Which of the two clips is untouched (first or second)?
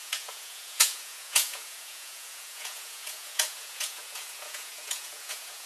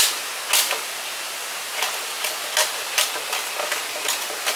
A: second